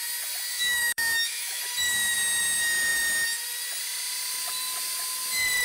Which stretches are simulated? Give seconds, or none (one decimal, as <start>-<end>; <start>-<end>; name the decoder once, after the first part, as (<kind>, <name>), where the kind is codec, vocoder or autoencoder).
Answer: 0.5-1.6 (autoencoder, DAC-VAE)